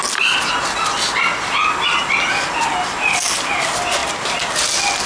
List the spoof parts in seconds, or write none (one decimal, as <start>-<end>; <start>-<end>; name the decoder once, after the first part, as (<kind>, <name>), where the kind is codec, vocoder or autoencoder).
none